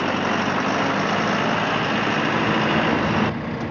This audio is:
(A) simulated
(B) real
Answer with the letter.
B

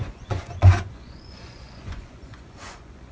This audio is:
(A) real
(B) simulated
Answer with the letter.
B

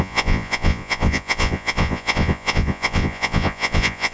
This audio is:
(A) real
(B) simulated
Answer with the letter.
B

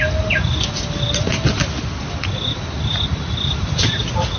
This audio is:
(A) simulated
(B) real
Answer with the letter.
B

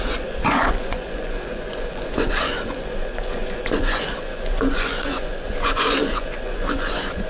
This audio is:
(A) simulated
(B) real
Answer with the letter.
A